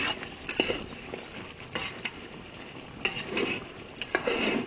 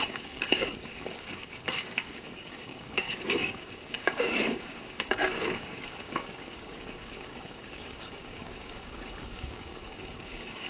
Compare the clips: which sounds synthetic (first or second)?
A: second